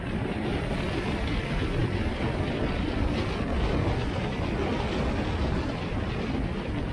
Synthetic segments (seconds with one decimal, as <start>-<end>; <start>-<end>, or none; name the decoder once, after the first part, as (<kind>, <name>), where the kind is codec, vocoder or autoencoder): none